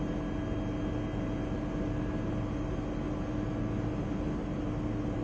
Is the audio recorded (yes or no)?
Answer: yes